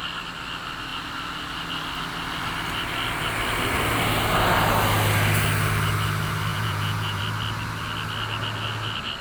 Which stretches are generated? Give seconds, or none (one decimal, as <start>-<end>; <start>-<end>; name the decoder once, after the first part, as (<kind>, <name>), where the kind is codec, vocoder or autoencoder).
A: 6.5-7.2 (vocoder, Vocos)